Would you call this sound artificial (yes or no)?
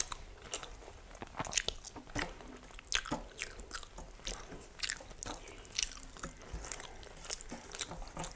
no